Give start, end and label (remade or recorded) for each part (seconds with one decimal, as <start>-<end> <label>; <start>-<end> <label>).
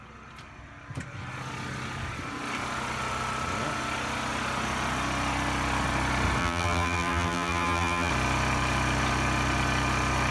0.0-6.4 recorded; 6.4-8.1 remade; 8.1-10.3 recorded